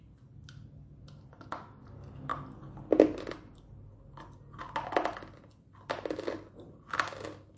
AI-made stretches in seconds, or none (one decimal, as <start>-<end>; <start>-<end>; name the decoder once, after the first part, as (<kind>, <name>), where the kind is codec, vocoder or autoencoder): none